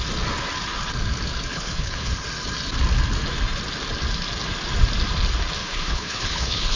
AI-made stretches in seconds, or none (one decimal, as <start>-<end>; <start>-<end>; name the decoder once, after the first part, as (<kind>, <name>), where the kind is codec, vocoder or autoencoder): 1.5-2.1 (codec, HILCodec); 5.6-6.8